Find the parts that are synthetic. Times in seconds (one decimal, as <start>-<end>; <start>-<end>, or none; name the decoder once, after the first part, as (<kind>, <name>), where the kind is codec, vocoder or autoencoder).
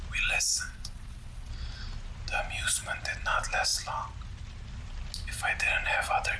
0.5-1.5 (vocoder, Vocos)